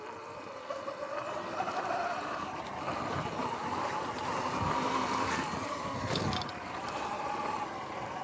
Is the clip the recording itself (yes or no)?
yes